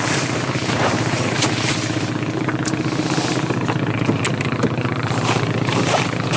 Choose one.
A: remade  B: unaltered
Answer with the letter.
A